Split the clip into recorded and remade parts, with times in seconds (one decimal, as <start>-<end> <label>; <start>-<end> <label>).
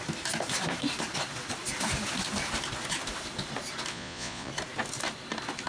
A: 0.0-3.9 recorded; 3.9-4.5 remade; 4.5-5.7 recorded